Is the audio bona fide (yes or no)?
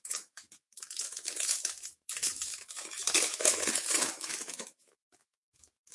no